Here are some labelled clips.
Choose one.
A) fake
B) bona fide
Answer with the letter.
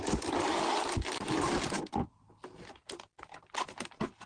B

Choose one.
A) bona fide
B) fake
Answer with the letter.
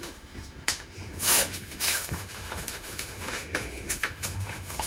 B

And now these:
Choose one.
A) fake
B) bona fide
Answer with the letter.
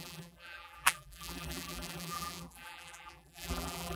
A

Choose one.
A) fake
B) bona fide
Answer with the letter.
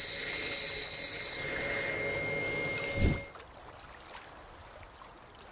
B